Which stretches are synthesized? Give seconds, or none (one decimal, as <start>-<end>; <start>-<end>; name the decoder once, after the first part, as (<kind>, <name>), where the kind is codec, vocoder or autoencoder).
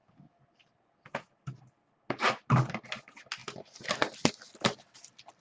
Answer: 0.0-1.6 (vocoder, BigVGAN v2); 3.4-4.3